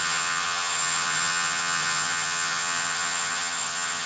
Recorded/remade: remade